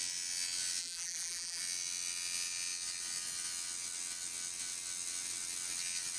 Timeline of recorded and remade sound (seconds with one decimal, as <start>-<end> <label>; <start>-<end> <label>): 0.0-0.8 recorded; 0.8-1.6 remade; 1.6-6.2 recorded